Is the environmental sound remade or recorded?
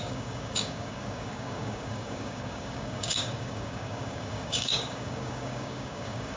remade